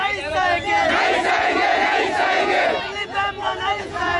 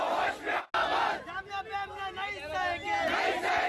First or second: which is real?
second